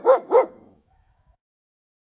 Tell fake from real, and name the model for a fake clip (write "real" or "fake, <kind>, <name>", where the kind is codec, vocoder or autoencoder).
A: fake, autoencoder, DAC-VAE